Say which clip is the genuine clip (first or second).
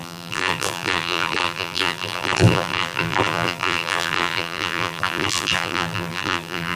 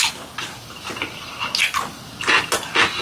second